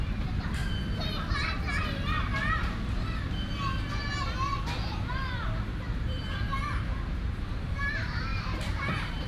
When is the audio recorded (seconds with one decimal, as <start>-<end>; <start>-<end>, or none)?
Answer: 0.6-1.8; 2.3-5.6